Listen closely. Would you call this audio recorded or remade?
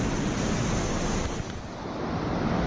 recorded